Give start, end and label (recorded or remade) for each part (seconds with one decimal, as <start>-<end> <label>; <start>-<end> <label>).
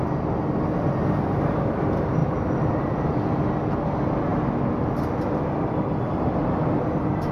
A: 0.0-7.3 recorded